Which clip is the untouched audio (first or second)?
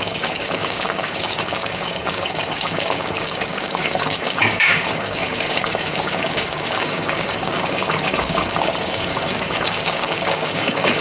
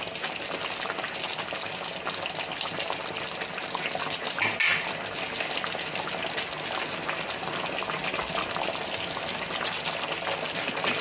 second